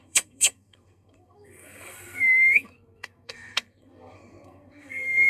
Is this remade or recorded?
remade